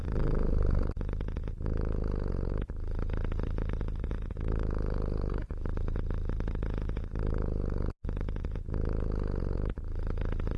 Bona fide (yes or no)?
yes